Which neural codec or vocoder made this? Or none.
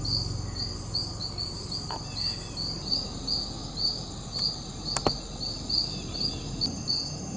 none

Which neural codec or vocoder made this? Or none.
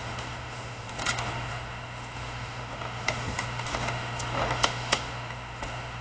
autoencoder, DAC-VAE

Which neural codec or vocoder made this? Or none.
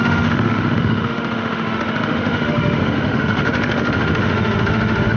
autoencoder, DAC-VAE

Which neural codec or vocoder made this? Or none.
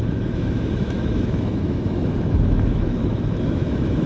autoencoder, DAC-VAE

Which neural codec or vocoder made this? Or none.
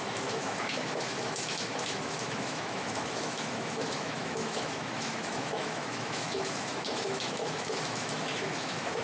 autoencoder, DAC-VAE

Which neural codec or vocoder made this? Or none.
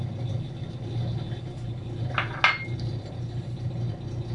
none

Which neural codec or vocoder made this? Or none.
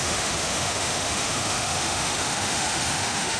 autoencoder, DAC-VAE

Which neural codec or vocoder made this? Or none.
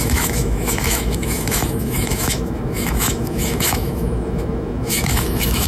autoencoder, DAC-VAE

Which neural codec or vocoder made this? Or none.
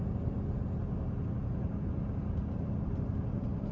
none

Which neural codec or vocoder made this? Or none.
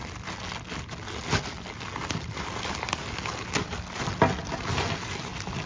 none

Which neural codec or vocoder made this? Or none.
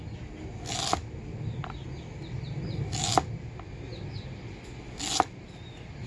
none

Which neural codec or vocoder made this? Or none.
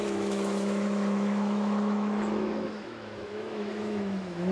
autoencoder, DAC-VAE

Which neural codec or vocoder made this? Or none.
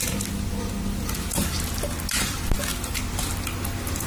none